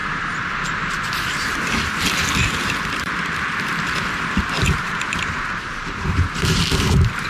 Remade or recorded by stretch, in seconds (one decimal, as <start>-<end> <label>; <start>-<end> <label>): 0.0-4.4 recorded; 4.4-7.3 remade